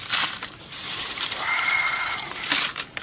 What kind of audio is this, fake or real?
fake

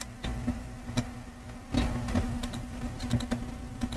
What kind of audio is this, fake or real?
real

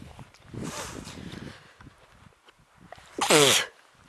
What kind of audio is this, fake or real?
real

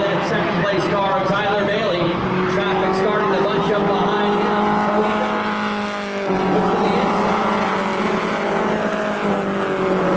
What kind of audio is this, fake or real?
real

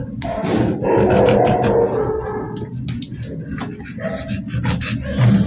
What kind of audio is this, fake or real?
real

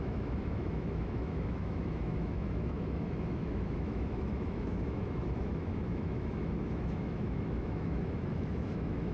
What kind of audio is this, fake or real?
fake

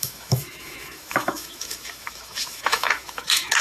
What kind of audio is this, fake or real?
fake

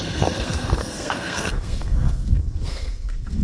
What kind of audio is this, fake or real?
fake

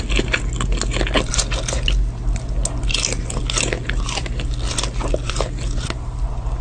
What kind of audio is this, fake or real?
real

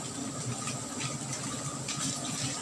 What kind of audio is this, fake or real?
real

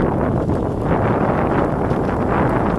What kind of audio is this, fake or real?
real